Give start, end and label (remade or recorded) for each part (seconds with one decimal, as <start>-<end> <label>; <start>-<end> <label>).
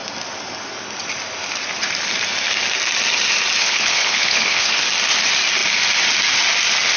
0.0-3.6 recorded; 3.6-4.8 remade; 4.8-7.0 recorded